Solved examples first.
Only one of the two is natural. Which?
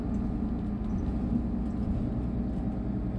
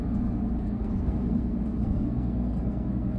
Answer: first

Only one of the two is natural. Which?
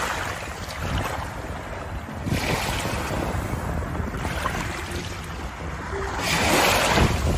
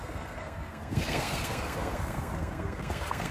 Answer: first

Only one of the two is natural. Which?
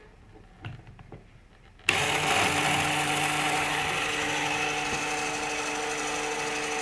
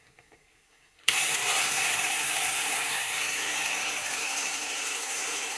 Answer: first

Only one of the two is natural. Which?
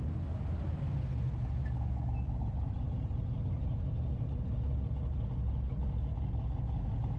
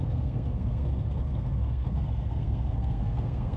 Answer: first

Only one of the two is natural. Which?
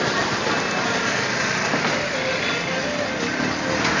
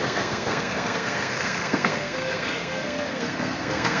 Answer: first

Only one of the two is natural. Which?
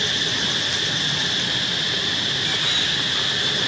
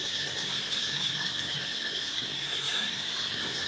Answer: first